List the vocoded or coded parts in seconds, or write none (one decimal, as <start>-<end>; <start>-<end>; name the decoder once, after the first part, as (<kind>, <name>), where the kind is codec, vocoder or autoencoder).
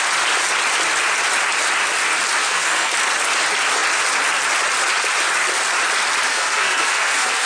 2.4-2.9 (codec, SNAC); 6.3-7.5